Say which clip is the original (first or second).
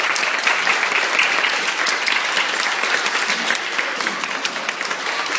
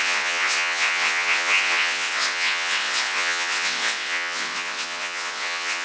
first